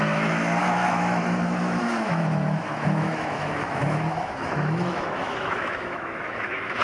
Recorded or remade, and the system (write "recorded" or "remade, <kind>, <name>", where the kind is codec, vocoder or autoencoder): remade, autoencoder, DAC-VAE